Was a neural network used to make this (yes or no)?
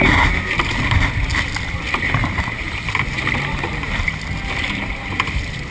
no